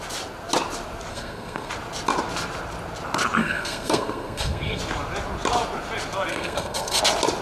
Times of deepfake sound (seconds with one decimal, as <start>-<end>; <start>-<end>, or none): 1.1-1.7; 3.4-4.8; 6.3-7.0